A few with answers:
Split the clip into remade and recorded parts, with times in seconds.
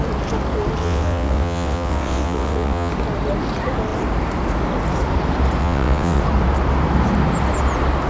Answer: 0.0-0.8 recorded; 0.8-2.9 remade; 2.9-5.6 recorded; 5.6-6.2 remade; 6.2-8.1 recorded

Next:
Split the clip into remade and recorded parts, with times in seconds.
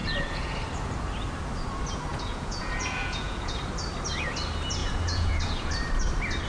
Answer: 0.0-0.6 remade; 0.6-2.1 recorded; 2.1-3.6 remade; 3.6-4.8 recorded; 4.8-5.7 remade; 5.7-6.5 recorded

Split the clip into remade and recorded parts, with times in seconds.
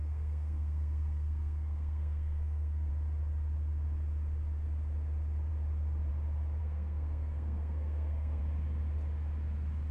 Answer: 0.0-2.9 remade; 2.9-6.6 recorded; 6.6-8.4 remade; 8.4-9.9 recorded